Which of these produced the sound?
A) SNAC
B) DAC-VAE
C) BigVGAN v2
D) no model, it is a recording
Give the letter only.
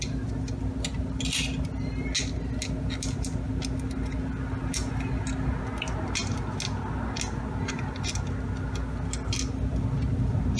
D